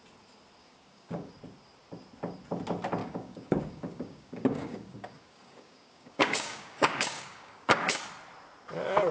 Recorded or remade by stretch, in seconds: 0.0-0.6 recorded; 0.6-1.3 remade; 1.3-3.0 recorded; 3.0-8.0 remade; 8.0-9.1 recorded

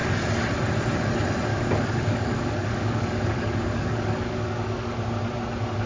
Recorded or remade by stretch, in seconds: 0.0-1.5 recorded; 1.5-5.0 remade; 5.0-5.9 recorded

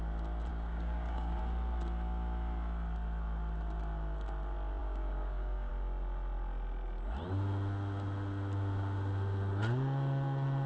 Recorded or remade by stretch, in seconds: 0.0-0.5 recorded; 0.5-1.4 remade; 1.4-4.8 recorded; 4.8-5.7 remade; 5.7-10.7 recorded

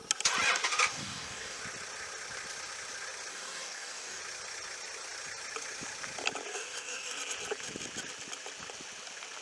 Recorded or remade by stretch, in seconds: 0.0-0.9 recorded; 0.9-1.6 remade; 1.6-3.3 recorded; 3.3-4.2 remade; 4.2-6.5 recorded; 6.5-7.2 remade; 7.2-9.4 recorded

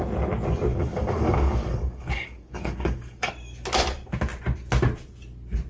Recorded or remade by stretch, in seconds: 0.0-0.7 recorded; 0.7-3.3 remade; 3.3-5.7 recorded

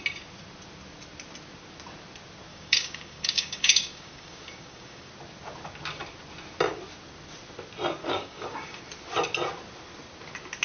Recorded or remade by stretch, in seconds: 0.0-2.5 recorded; 2.5-5.1 remade; 5.1-8.0 recorded; 8.0-8.8 remade; 8.8-10.6 recorded

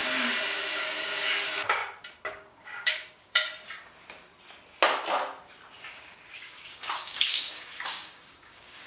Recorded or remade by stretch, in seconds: 0.0-0.8 recorded; 0.8-1.8 remade; 1.8-2.3 recorded; 2.3-3.5 remade; 3.5-5.9 recorded; 5.9-8.9 remade

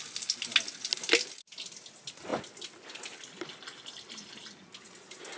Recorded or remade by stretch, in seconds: 0.0-5.4 recorded